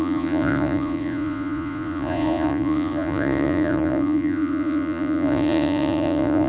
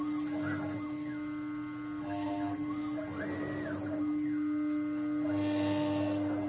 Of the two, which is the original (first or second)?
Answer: second